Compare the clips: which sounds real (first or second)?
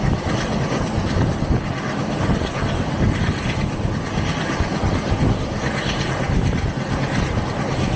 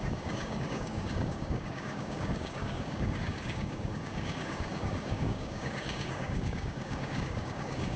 first